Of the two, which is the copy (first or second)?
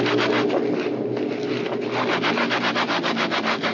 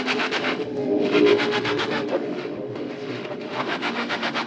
second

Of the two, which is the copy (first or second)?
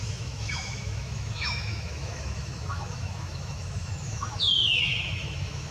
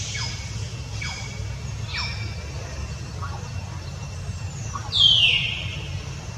first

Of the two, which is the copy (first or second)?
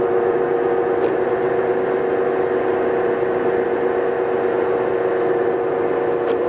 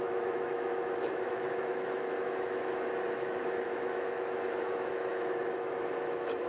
second